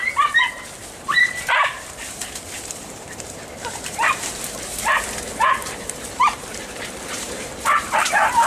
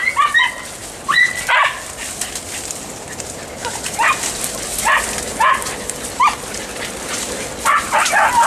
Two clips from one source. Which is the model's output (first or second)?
first